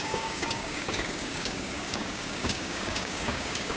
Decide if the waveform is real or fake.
fake